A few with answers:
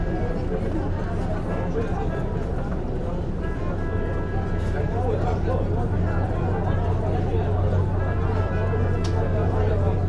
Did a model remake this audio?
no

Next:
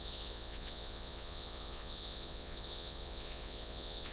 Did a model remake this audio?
yes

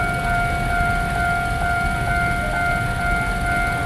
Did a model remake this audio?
no